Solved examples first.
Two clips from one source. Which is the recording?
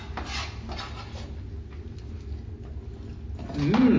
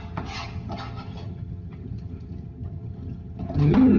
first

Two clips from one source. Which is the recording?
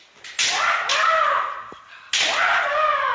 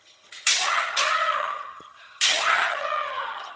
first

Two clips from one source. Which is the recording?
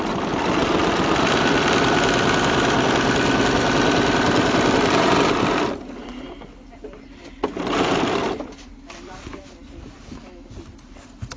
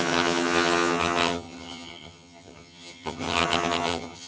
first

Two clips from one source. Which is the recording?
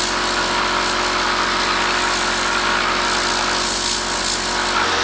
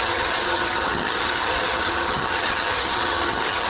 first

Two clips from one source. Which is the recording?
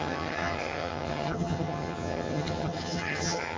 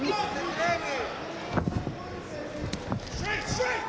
second